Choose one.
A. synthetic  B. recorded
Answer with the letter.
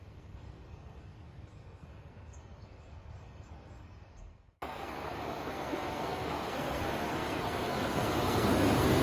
A